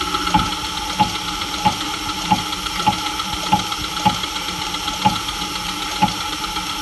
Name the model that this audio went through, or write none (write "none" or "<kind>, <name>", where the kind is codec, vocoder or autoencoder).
none